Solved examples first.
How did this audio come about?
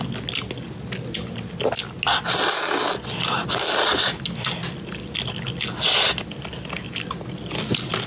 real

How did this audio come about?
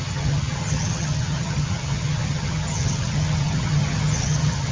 fake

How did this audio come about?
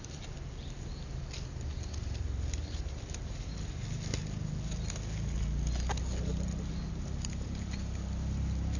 real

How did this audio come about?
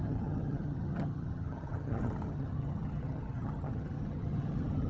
fake